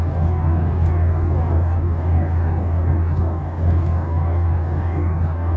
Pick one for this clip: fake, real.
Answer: fake